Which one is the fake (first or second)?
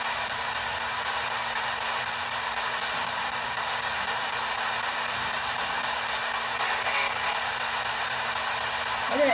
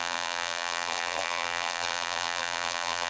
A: second